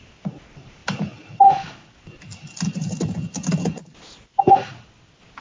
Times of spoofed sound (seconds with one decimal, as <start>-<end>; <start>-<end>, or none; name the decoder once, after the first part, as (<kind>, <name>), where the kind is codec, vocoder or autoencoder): none